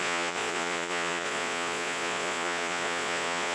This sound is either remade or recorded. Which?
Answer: remade